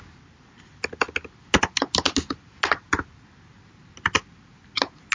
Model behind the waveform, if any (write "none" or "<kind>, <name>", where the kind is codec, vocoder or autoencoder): none